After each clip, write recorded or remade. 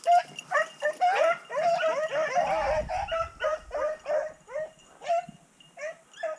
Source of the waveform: recorded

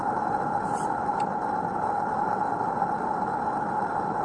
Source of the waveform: recorded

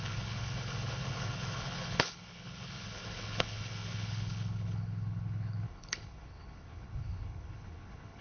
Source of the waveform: remade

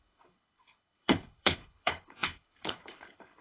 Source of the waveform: remade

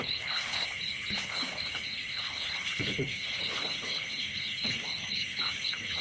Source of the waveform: remade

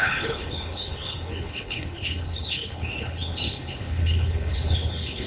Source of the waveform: remade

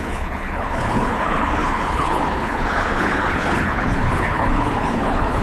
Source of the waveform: remade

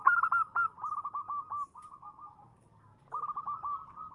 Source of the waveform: recorded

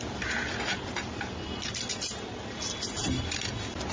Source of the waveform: recorded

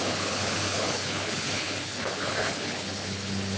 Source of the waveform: remade